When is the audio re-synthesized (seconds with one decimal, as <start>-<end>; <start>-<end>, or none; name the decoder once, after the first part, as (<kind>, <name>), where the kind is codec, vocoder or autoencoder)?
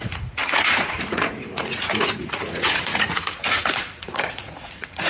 0.0-5.1 (vocoder, Vocos)